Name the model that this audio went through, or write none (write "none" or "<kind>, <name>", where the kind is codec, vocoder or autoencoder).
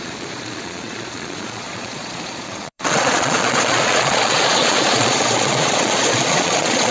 vocoder, Vocos